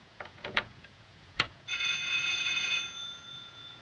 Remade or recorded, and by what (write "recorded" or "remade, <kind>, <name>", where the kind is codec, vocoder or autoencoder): remade, vocoder, Vocos